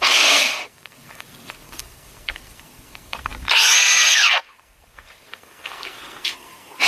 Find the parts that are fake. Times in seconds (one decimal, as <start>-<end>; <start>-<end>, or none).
0.0-6.9